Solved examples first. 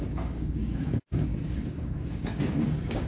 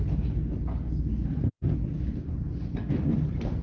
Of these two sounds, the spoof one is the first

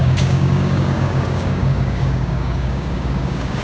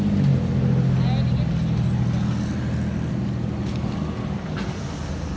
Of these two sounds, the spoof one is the first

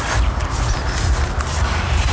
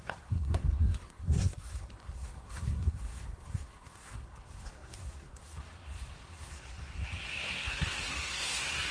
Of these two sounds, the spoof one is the second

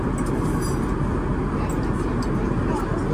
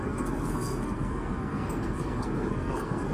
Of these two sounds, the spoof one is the second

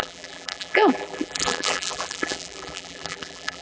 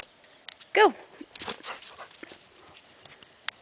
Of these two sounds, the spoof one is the first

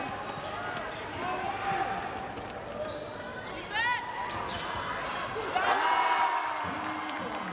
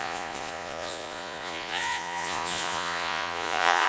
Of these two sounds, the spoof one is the second